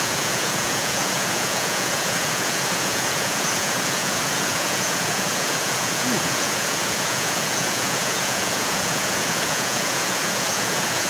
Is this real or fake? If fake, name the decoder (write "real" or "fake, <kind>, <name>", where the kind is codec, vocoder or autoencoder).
fake, vocoder, Vocos